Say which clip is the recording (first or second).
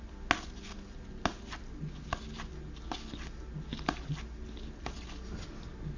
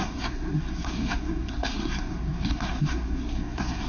first